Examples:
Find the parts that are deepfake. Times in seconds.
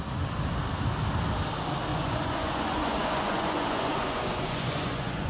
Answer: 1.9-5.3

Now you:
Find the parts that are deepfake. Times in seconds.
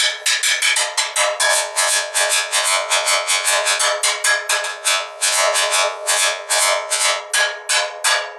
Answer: 1.5-3.8; 4.7-7.2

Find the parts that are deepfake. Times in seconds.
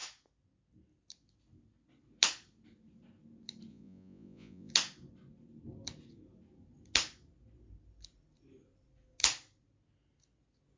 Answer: 3.7-4.7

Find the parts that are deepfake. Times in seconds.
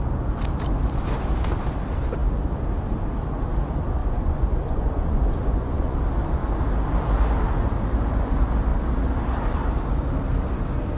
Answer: 4.0-6.0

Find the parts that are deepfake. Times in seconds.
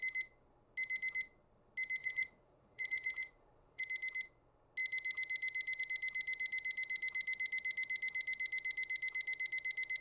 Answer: 2.0-3.8